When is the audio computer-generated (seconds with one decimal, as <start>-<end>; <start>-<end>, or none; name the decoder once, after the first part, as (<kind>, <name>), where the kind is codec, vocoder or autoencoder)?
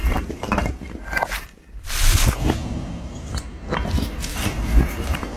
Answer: none